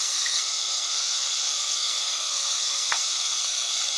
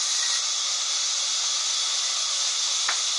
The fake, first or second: first